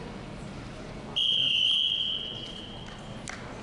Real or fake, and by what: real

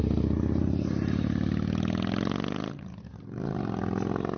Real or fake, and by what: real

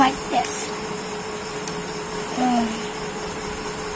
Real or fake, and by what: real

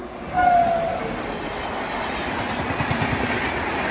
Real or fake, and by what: real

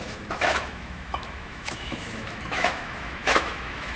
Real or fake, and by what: fake, autoencoder, DAC-VAE